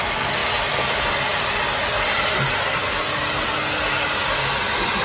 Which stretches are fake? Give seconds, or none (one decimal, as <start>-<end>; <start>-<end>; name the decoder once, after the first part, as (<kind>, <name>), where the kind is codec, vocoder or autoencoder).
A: none